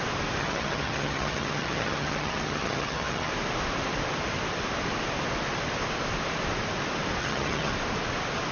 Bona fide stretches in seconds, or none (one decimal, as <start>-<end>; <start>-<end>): 0.0-0.4; 3.3-7.2; 7.7-8.5